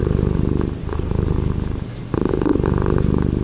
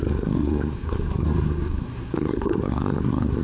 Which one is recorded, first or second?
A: first